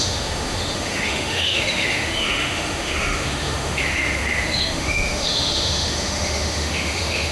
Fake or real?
fake